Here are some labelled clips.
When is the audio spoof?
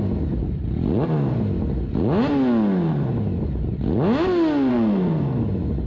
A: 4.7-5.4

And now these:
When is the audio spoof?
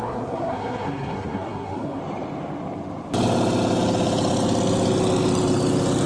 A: 0.0-2.0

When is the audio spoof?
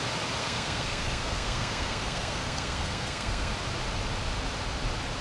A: 0.4-3.5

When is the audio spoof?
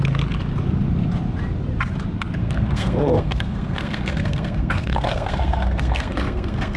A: 2.4-6.8